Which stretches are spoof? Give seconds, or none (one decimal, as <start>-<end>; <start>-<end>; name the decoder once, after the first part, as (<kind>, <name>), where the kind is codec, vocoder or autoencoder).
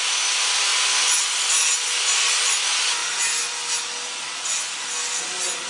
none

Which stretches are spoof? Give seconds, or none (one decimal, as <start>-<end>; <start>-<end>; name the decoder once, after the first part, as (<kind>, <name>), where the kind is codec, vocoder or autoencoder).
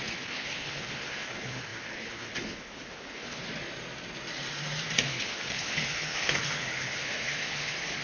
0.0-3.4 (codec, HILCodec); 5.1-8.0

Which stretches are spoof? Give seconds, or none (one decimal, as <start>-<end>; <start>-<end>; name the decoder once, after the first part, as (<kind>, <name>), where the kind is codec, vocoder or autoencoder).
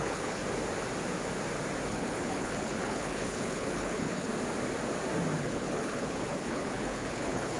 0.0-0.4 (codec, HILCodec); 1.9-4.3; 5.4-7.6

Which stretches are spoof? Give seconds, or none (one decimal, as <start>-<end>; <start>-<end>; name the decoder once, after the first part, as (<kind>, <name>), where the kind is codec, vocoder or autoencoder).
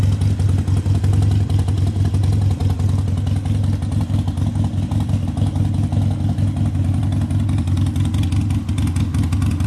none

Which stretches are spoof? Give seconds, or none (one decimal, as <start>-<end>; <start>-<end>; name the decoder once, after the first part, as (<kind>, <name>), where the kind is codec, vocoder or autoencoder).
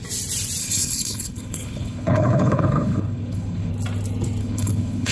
0.6-3.7 (codec, HILCodec); 4.4-5.1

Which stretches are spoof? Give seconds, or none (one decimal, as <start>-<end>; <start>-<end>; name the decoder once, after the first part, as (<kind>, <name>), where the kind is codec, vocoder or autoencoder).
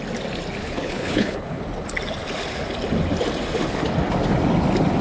0.6-1.6 (codec, HILCodec)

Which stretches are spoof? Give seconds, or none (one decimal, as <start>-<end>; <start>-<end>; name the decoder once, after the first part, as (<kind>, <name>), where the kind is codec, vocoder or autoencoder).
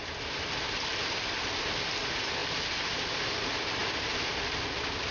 none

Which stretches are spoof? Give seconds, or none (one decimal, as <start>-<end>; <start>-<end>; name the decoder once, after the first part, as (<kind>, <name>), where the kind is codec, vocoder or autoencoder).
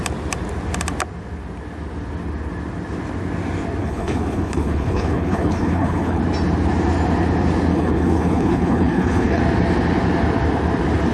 3.8-6.2 (codec, HILCodec); 7.7-9.4